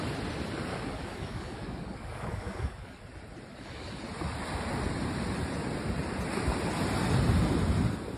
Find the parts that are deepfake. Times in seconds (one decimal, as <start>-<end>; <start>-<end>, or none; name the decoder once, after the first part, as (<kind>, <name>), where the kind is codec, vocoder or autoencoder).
0.7-3.0 (codec, DAC); 3.5-4.0